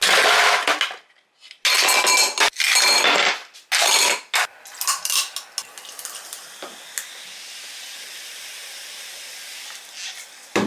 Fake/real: real